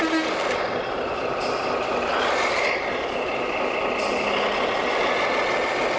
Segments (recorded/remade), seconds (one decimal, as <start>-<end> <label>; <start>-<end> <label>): 0.0-6.0 recorded